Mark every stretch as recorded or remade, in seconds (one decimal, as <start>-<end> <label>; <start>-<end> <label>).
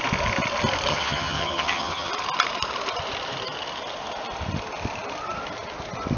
0.0-0.9 recorded; 0.9-2.1 remade; 2.1-6.2 recorded